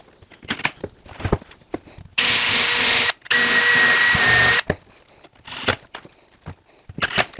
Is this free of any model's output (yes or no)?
yes